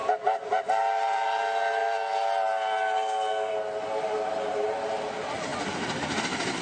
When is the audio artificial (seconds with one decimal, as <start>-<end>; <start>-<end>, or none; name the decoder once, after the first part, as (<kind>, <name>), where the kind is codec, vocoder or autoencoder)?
none